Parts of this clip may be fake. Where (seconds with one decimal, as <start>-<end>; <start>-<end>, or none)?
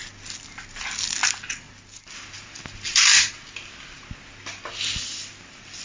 none